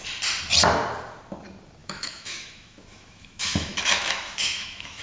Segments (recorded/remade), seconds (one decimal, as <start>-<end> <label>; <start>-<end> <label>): 0.0-1.8 recorded; 1.8-5.0 remade